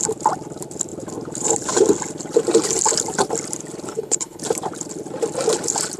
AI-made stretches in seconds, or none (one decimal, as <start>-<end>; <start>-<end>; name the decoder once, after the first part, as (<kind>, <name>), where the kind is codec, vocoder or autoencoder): 3.9-4.4 (codec, HILCodec)